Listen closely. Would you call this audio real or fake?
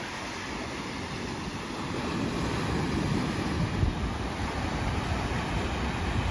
real